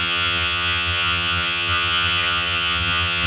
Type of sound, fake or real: fake